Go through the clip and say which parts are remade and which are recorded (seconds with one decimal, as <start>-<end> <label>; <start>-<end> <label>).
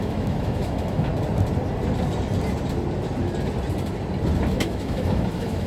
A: 0.0-1.1 remade; 1.1-4.5 recorded; 4.5-5.7 remade